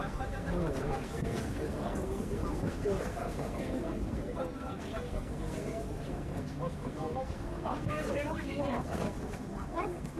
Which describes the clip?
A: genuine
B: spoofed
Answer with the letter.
B